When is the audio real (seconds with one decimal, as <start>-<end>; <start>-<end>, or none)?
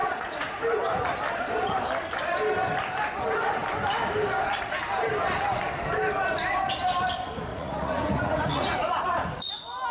0.6-7.5; 9.5-9.9